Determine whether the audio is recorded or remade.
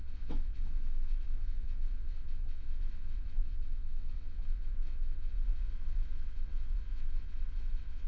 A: remade